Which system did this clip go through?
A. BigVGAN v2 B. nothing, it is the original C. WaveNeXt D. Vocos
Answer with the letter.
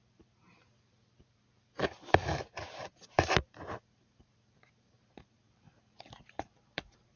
A